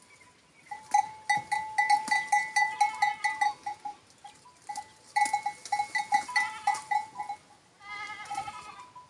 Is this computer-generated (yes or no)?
no